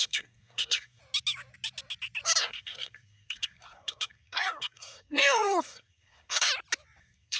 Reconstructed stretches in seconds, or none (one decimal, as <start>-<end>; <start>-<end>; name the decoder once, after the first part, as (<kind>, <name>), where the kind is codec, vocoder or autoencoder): 0.0-1.0 (codec, SNAC); 2.4-6.5; 7.0-7.4